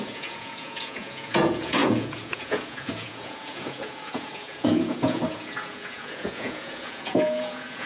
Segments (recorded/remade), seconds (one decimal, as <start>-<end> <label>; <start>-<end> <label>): 0.0-7.9 remade